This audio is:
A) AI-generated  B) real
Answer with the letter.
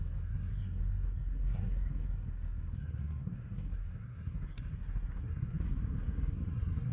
A